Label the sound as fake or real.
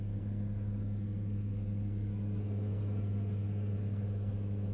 fake